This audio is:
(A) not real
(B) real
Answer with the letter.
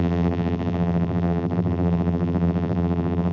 A